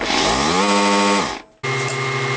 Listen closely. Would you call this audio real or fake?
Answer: real